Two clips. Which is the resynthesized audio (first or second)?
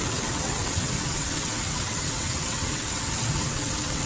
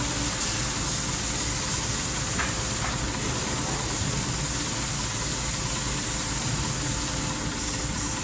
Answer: first